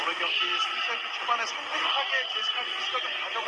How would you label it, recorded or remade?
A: recorded